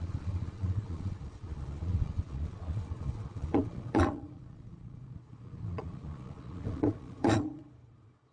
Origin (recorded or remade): remade